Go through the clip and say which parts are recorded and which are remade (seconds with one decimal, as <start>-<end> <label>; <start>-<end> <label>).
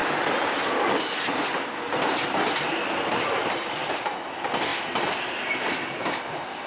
0.0-6.7 recorded